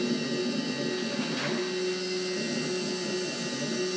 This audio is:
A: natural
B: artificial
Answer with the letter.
A